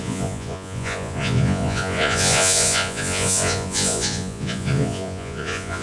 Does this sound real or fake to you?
fake